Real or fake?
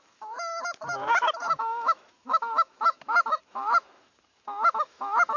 fake